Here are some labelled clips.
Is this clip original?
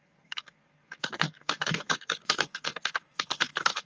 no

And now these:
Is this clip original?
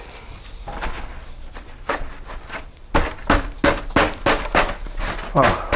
yes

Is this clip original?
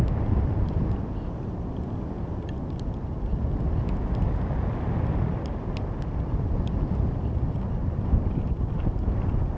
yes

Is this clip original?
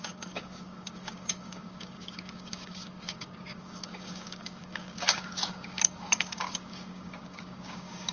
no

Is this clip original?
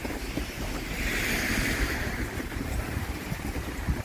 no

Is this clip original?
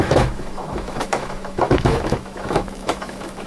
no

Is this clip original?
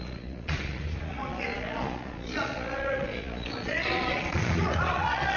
no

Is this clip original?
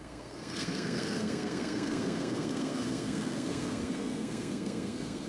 no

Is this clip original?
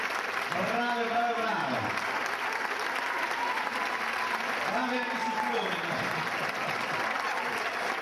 yes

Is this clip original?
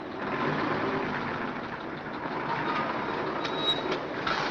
yes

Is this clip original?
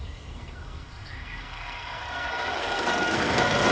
no